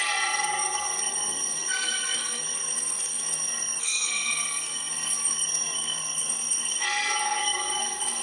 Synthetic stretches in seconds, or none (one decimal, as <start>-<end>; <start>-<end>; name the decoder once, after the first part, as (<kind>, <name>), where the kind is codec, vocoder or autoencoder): 0.0-8.2 (codec, SNAC)